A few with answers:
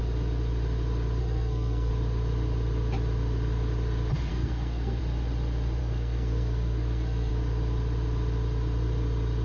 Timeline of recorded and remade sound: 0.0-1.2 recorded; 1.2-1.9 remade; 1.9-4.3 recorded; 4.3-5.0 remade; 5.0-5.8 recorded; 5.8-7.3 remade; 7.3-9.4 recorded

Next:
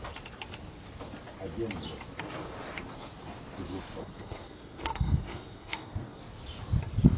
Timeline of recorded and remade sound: 0.0-4.0 recorded; 4.0-6.2 remade; 6.2-7.2 recorded

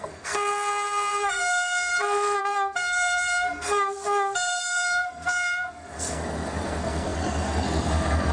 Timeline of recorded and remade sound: 0.0-1.9 remade; 1.9-2.4 recorded; 2.4-8.3 remade

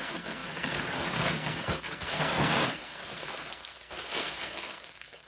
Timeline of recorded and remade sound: 0.0-5.3 remade